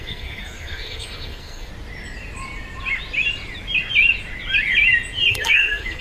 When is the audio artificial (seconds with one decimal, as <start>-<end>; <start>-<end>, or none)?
0.0-1.7; 5.3-6.0